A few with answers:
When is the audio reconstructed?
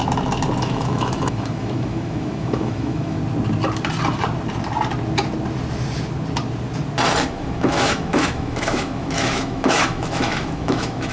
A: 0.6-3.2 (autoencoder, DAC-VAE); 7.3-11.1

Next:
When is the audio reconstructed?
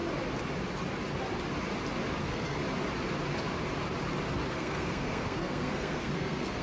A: 2.2-2.6 (codec, SNAC); 4.5-6.6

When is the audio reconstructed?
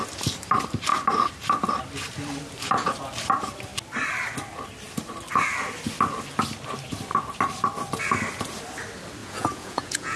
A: 9.2-10.2 (vocoder, Vocos)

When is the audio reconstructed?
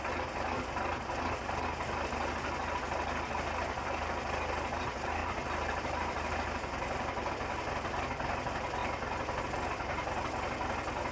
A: 5.2-7.3 (vocoder, BigVGAN v2)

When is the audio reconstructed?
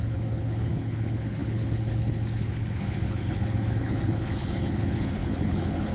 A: 0.0-5.9 (codec, HILCodec)